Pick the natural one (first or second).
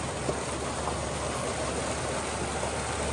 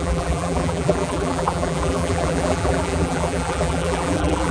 first